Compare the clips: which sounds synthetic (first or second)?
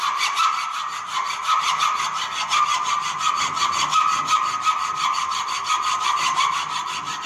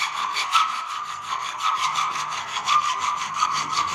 second